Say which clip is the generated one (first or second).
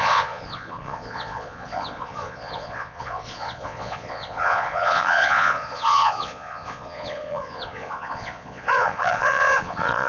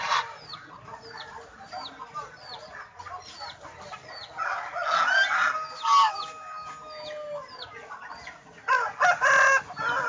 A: first